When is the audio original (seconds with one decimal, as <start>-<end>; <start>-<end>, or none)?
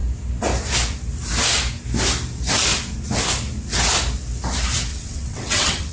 0.0-4.9